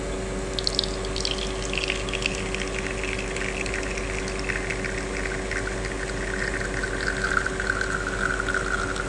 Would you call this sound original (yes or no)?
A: yes